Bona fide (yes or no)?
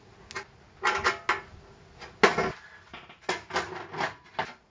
yes